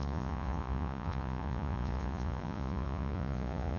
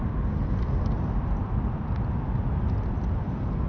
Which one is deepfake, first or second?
first